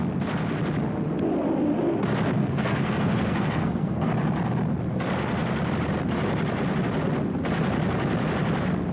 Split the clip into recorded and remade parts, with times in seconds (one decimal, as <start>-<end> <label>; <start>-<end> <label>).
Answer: 0.0-2.4 recorded; 2.4-4.1 remade; 4.1-8.9 recorded